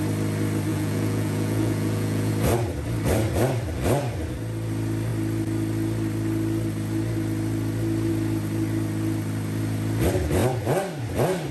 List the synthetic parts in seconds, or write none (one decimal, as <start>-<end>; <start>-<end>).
0.7-2.3